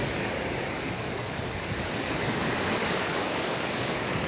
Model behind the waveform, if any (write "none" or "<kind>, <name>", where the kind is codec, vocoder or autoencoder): codec, DAC